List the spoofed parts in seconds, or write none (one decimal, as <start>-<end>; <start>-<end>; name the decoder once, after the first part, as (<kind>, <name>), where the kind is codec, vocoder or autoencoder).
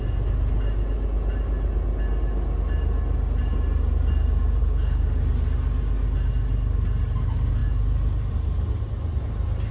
4.6-5.2 (codec, HILCodec)